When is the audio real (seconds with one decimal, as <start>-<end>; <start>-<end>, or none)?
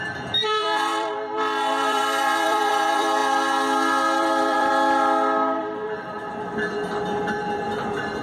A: 3.2-4.2; 4.7-5.6